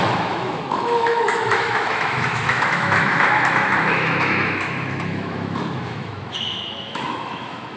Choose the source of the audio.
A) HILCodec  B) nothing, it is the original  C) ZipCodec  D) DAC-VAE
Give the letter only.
D